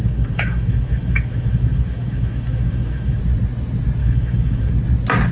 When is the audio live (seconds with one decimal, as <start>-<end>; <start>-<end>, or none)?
3.2-4.0; 4.7-5.3